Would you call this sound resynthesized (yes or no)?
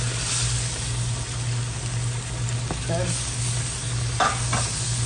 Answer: no